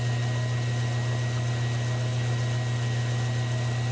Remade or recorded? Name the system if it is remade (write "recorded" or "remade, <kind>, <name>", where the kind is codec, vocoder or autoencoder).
recorded